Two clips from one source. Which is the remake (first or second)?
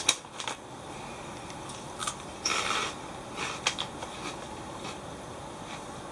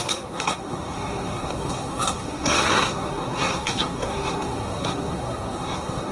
second